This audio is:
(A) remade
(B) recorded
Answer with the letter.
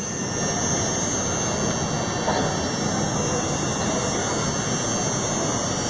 B